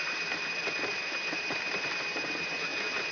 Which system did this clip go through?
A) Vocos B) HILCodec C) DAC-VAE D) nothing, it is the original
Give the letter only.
D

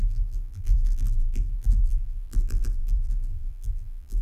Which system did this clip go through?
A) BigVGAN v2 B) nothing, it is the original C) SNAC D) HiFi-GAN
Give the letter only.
A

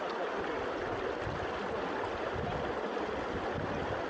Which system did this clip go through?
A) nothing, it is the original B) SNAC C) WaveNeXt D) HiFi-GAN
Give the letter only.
A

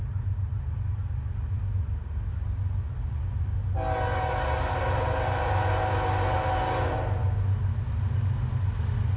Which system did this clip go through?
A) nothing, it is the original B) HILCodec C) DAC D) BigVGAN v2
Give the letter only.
A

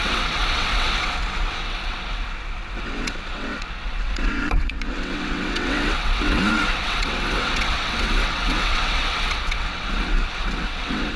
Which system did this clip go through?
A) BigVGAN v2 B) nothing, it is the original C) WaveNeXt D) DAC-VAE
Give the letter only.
C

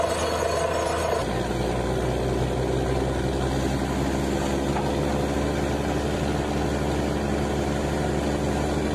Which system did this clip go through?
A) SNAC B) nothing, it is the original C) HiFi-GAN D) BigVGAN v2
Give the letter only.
B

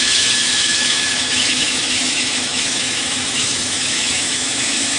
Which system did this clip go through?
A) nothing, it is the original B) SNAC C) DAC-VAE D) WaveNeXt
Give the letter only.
C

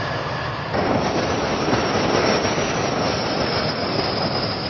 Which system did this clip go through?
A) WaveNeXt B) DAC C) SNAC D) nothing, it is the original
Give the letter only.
D